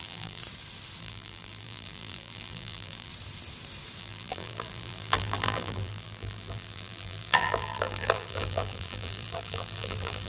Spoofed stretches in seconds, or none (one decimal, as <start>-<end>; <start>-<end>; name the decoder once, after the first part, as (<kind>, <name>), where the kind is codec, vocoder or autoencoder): 0.0-0.4 (vocoder, BigVGAN v2); 1.0-3.1; 4.0-10.3